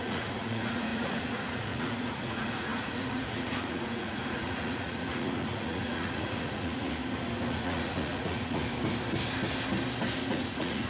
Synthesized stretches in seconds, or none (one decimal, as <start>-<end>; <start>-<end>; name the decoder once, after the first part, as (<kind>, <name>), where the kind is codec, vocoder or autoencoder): 0.0-7.0 (vocoder, Vocos); 7.5-8.6; 10.3-10.9